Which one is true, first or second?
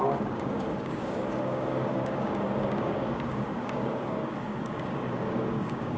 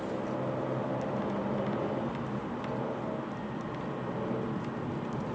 second